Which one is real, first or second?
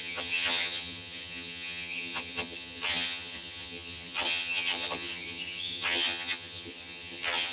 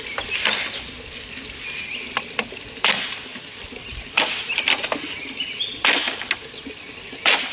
second